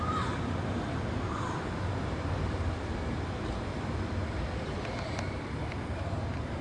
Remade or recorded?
remade